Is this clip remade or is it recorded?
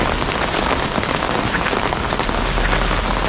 recorded